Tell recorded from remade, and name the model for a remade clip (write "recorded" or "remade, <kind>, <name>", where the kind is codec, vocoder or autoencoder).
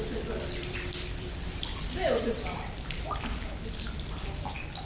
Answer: remade, vocoder, BigVGAN v2